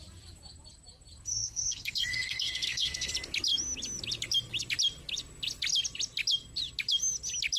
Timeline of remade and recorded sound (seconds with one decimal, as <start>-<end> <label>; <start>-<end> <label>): 0.0-1.3 recorded; 1.3-3.1 remade; 3.1-7.6 recorded